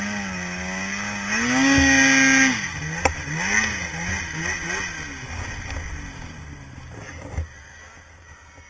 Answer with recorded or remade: recorded